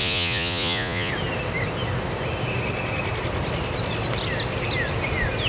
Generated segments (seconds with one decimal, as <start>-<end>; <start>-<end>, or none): 0.0-1.1